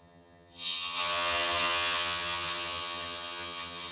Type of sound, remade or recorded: remade